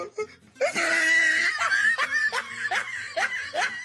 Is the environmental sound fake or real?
real